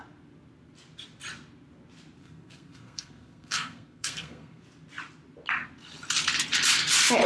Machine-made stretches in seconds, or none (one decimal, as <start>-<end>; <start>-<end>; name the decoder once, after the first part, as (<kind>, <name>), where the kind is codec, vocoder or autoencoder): 2.2-4.6 (codec, SNAC)